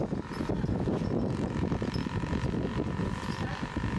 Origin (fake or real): real